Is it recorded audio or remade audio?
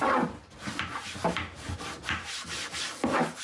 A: recorded